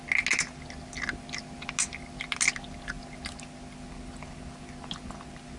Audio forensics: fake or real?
real